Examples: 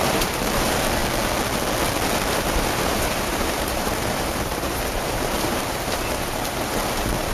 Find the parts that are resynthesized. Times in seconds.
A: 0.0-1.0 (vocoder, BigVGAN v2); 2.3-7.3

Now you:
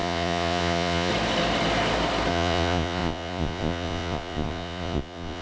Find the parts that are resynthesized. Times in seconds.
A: 0.0-1.1 (vocoder, Vocos); 2.3-5.4